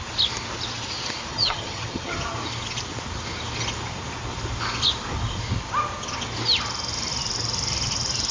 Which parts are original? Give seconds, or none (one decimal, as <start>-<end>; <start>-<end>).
0.0-1.3; 2.2-8.3